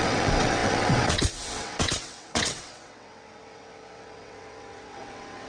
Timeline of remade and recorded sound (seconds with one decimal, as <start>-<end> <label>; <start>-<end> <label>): 0.0-5.5 remade